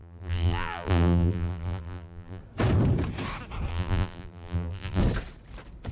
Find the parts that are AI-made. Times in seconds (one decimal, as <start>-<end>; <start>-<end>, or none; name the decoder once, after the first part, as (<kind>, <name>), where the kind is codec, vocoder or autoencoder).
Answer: 0.0-2.4 (vocoder, BigVGAN v2); 3.7-5.0